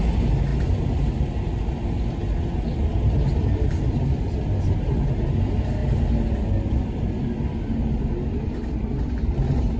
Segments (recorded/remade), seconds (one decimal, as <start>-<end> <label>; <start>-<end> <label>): 0.0-9.8 recorded